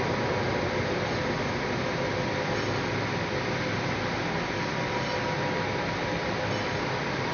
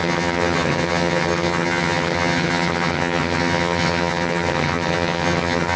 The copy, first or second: second